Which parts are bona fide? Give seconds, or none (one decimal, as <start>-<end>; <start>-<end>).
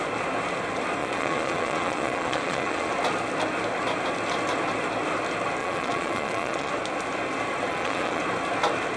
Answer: 0.0-1.0; 2.9-5.6; 6.7-7.7; 8.2-9.0